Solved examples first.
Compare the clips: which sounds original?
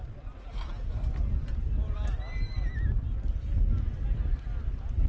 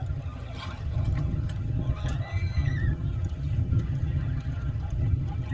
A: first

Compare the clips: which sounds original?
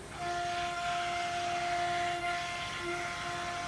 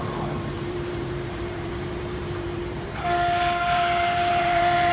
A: first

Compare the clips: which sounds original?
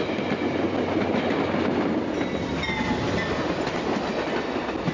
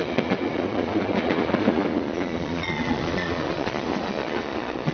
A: first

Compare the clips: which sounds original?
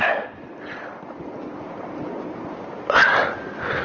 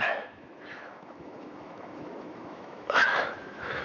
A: first